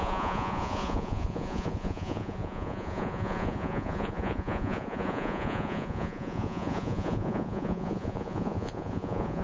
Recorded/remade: remade